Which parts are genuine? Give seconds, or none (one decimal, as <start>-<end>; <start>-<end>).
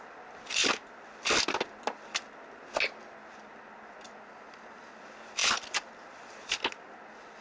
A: 0.0-7.4